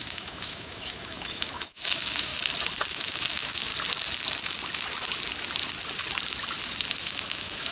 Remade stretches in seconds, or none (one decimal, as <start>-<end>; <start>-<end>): 0.0-2.3; 2.9-3.7; 7.0-7.7